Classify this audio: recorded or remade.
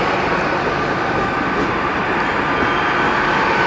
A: recorded